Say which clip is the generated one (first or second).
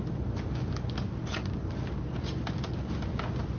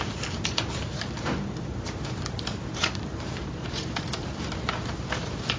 second